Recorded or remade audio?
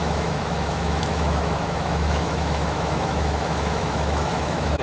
remade